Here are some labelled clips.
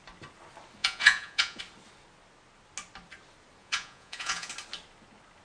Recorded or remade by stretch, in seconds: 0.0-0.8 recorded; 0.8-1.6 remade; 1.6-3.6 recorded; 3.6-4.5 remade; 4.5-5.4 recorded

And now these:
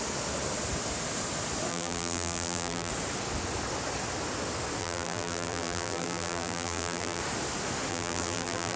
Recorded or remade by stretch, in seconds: 0.0-1.7 recorded; 1.7-2.9 remade; 2.9-4.8 recorded; 4.8-7.2 remade; 7.2-7.9 recorded; 7.9-8.8 remade

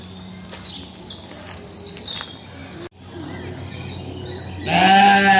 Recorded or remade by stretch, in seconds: 0.0-5.4 recorded

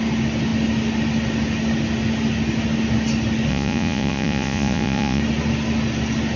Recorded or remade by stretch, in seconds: 0.0-3.5 recorded; 3.5-5.2 remade; 5.2-6.4 recorded

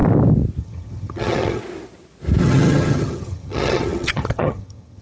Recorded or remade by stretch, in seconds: 0.0-0.6 recorded; 0.6-1.6 remade; 1.6-2.4 recorded; 2.4-5.0 remade

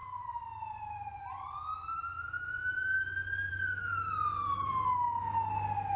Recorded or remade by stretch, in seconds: 0.0-6.0 recorded